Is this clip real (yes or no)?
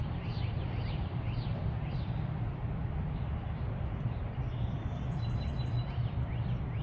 no